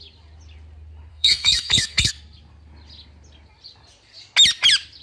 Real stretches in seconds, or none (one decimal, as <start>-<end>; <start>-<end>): 0.0-1.1; 2.1-5.0